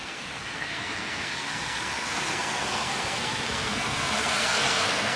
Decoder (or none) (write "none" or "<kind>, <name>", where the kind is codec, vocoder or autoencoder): codec, SNAC